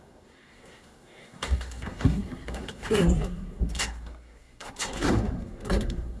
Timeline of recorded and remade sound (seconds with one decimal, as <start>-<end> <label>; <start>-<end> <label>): 0.0-6.2 remade